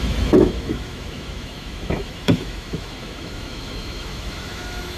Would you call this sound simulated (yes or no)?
yes